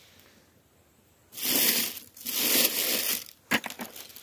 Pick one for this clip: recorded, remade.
recorded